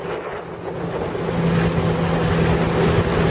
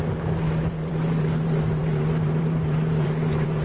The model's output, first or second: second